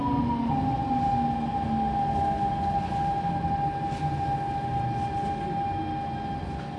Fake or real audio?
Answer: real